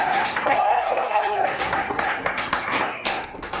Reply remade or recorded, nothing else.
remade